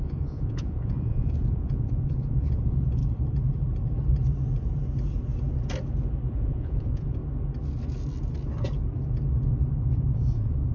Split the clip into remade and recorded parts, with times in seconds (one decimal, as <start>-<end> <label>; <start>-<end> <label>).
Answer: 0.0-3.0 remade; 3.0-6.3 recorded; 6.3-7.2 remade; 7.2-9.8 recorded; 9.8-10.7 remade